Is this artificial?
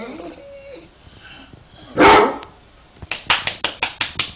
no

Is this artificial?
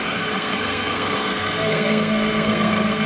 yes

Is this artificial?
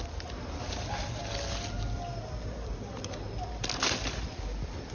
no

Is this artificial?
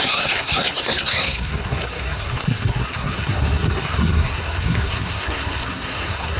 yes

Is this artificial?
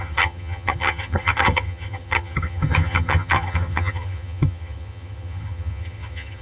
yes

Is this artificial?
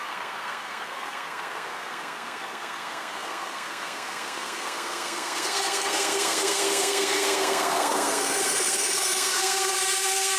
yes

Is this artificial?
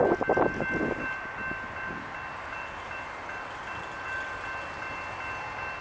no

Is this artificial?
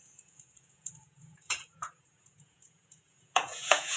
yes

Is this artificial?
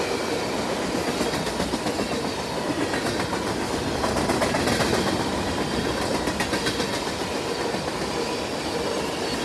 no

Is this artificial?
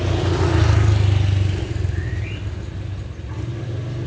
no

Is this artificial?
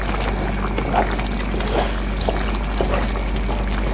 no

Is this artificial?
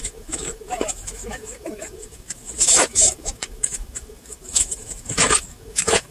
yes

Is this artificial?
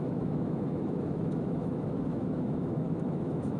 yes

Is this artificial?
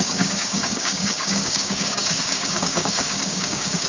yes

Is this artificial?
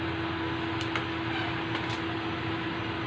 no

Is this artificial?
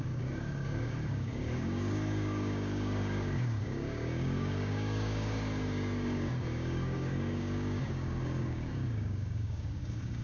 yes